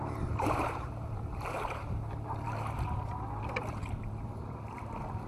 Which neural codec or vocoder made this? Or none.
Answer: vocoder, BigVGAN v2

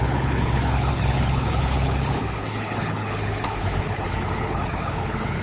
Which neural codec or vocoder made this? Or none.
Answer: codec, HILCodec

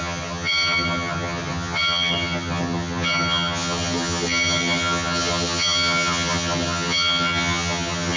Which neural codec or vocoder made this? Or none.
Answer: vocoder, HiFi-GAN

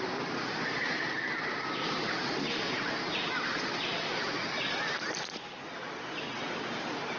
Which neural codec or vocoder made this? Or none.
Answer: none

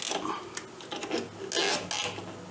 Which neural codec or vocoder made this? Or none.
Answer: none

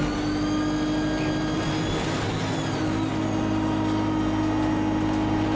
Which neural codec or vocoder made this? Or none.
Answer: none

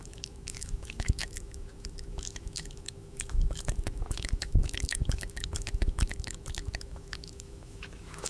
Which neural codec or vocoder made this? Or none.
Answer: autoencoder, DAC-VAE